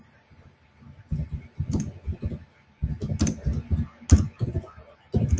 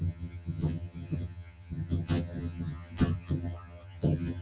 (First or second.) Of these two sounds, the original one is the first